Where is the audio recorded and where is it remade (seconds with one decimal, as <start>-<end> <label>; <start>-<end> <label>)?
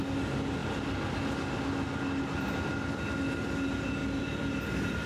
0.0-4.0 recorded; 4.0-5.1 remade